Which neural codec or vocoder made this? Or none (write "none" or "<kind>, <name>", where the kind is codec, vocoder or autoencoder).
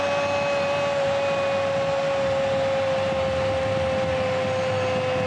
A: none